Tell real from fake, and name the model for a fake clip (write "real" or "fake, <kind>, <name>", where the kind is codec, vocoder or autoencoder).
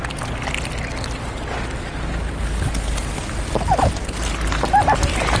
real